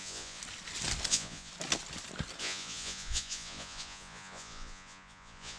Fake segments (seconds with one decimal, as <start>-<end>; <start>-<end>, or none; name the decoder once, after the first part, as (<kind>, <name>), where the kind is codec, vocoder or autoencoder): 0.0-0.4 (vocoder, Vocos); 1.1-1.5; 2.4-5.6

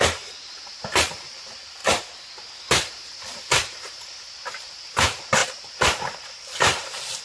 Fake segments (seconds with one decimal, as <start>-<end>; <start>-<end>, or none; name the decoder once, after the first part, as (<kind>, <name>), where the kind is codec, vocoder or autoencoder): 0.0-1.8 (vocoder, BigVGAN v2); 2.9-7.2

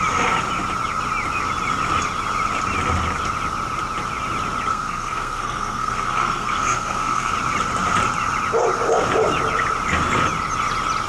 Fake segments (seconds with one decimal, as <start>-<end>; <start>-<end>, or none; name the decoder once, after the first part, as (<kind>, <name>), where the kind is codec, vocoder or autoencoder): 4.7-7.3 (codec, SNAC)

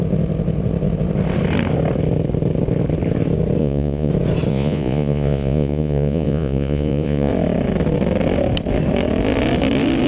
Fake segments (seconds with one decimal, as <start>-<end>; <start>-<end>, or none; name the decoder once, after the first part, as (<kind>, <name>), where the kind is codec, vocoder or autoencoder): 3.6-4.1 (vocoder, Vocos); 4.5-7.3

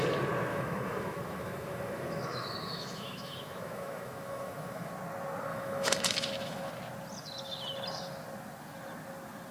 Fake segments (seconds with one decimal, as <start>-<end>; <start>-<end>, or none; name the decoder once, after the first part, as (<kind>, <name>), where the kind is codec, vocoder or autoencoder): 0.5-4.9 (autoencoder, DAC-VAE); 5.5-6.7

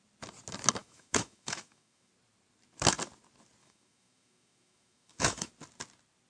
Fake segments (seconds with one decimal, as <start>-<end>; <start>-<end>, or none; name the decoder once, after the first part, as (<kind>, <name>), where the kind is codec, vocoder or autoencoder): 0.8-2.1 (autoencoder, DAC-VAE); 3.6-5.5